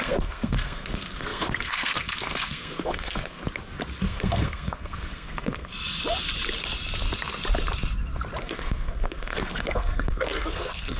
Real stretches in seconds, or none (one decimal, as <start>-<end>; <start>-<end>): 3.4-4.0; 5.7-8.4